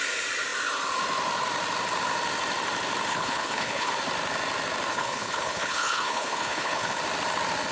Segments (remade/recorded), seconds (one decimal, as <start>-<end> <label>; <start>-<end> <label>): 0.0-3.1 recorded; 3.1-3.9 remade; 3.9-4.9 recorded; 4.9-7.0 remade; 7.0-7.7 recorded